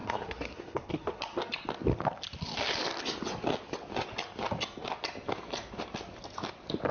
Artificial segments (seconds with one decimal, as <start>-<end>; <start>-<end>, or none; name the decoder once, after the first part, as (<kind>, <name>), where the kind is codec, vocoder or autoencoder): 0.0-1.2 (codec, SNAC)